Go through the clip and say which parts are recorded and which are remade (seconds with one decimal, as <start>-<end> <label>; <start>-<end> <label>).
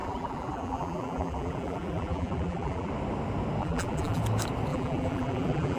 0.0-2.9 remade; 2.9-3.6 recorded; 3.6-4.2 remade; 4.2-4.7 recorded; 4.7-5.8 remade